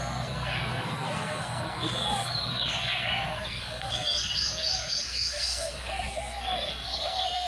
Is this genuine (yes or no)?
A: no